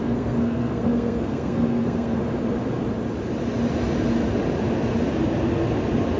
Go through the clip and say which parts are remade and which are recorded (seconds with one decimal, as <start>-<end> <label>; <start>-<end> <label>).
0.0-2.2 remade; 2.2-6.2 recorded